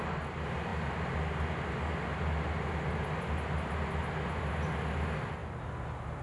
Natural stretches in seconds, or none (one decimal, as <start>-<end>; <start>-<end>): 0.0-6.2

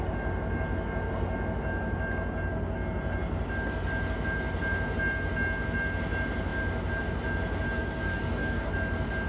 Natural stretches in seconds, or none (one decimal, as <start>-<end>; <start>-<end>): 0.0-7.8; 8.7-9.3

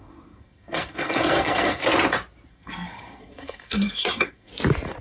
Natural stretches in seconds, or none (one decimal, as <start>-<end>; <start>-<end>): 1.8-2.5; 4.5-5.0

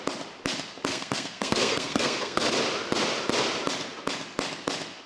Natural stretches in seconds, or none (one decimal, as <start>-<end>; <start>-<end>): 0.0-0.9; 2.5-5.1

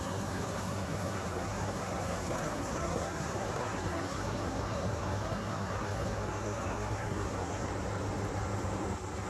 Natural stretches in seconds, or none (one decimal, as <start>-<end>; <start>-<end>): 7.7-9.3

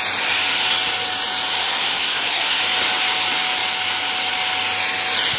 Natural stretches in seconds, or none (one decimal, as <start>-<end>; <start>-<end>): 0.0-1.6; 2.6-5.4

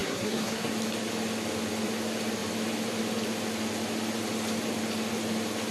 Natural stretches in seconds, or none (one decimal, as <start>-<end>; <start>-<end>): 0.7-5.7